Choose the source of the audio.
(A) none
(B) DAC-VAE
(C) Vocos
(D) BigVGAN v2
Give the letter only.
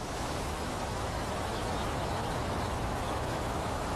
B